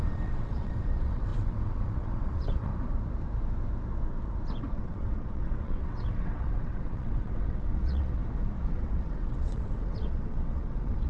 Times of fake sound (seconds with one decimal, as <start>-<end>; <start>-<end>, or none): 0.0-2.7; 4.7-8.2; 8.7-11.1